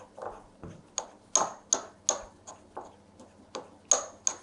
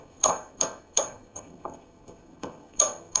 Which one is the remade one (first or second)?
second